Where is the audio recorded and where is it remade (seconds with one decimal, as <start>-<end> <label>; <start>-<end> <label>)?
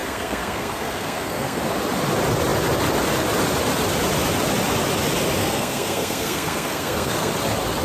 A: 0.0-1.6 remade; 1.6-5.4 recorded; 5.4-7.3 remade; 7.3-7.8 recorded